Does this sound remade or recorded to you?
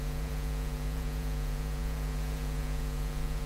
remade